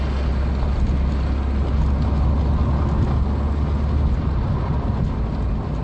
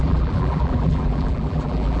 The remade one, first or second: second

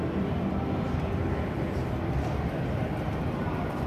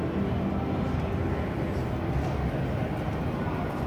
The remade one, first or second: first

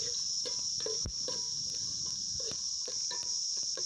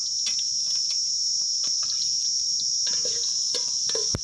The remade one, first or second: first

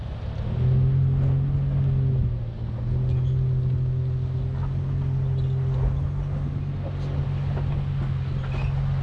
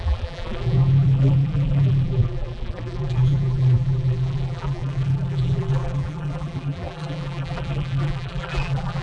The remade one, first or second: second